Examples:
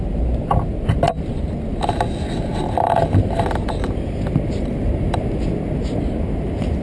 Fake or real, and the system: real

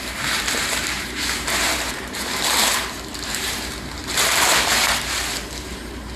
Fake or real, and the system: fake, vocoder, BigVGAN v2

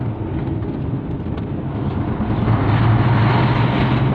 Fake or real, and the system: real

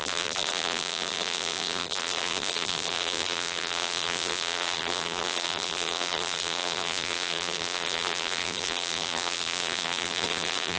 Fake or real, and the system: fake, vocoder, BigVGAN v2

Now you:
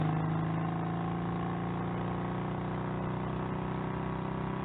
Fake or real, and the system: real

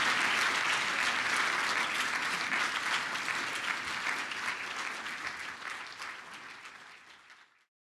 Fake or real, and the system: real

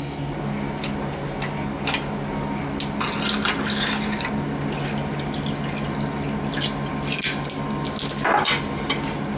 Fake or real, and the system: real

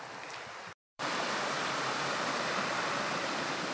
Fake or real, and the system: fake, vocoder, BigVGAN v2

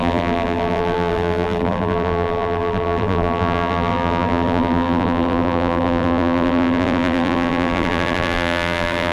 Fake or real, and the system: fake, vocoder, BigVGAN v2